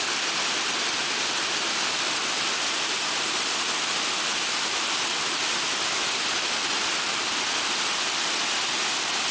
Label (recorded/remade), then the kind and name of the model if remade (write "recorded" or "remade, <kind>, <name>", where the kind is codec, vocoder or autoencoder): remade, vocoder, BigVGAN v2